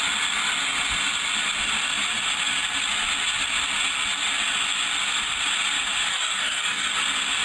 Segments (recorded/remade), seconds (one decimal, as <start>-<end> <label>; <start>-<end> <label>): 0.0-6.1 recorded; 6.1-6.9 remade; 6.9-7.4 recorded